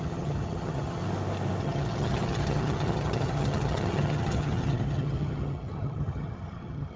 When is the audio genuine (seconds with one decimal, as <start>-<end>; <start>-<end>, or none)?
1.0-1.6